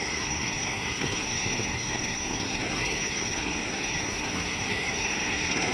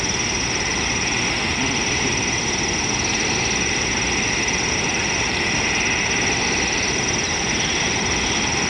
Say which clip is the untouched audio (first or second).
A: second